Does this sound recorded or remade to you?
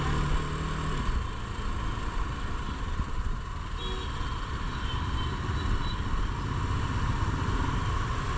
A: recorded